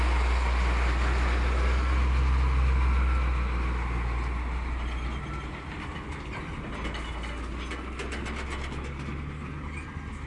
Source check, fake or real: real